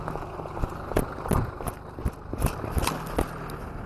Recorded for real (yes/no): yes